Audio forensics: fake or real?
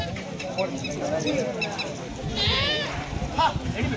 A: real